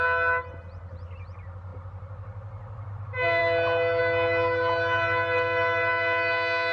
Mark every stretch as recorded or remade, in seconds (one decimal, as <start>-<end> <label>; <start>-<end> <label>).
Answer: 0.0-6.7 recorded